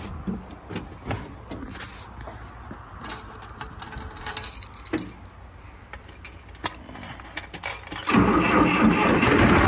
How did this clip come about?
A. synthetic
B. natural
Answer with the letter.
B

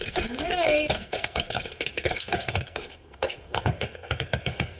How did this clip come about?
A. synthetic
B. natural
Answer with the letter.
A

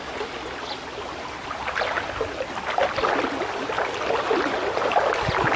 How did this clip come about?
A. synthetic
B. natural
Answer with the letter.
B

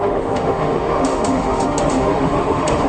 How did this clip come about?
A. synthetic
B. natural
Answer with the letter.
A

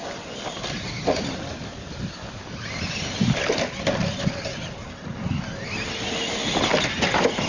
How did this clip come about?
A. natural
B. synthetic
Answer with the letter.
A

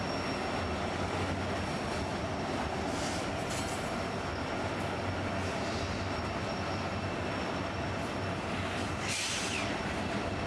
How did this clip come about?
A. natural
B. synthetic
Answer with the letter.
A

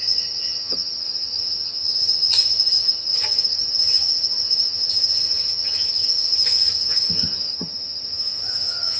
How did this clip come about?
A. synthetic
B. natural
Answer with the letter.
A